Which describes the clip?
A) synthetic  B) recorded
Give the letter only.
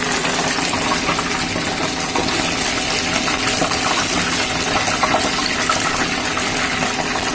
B